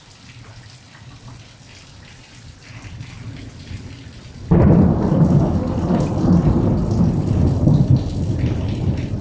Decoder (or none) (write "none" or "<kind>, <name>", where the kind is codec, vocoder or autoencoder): none